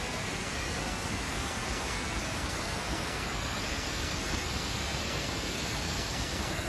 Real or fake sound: fake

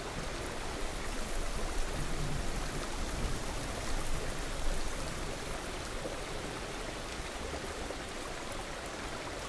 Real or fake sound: real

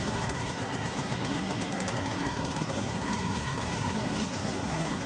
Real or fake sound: fake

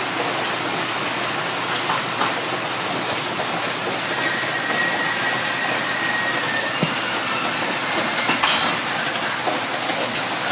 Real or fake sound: real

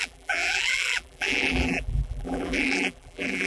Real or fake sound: fake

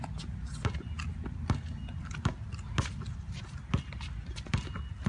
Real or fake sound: real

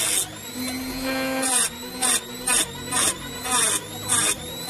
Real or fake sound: real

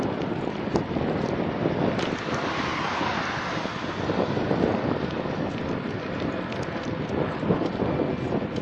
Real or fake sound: real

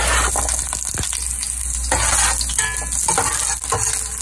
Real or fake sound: real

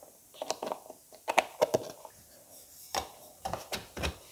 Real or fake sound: real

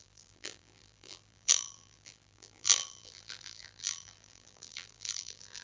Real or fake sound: fake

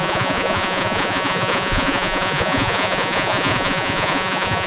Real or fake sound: fake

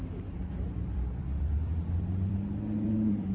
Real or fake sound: fake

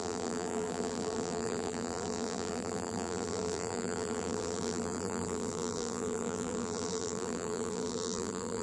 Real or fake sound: fake